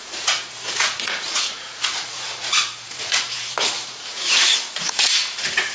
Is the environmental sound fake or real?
fake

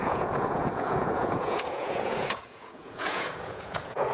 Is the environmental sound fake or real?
fake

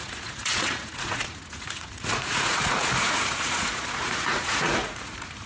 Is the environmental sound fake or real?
fake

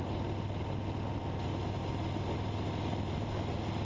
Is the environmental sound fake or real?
real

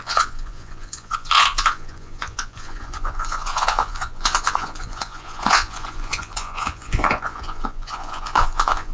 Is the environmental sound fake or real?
fake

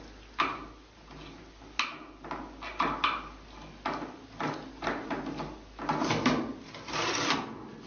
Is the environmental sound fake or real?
real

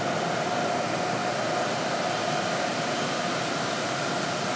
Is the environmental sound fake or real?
real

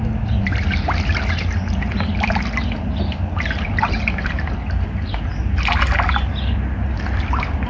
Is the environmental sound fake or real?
real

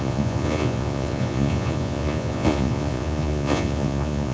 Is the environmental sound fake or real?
fake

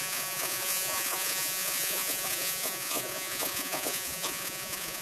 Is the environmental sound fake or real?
fake